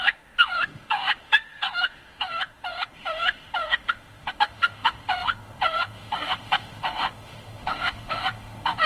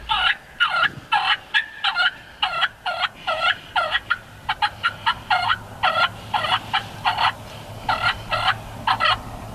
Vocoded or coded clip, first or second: first